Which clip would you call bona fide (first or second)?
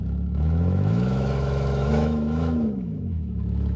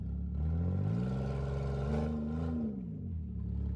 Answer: second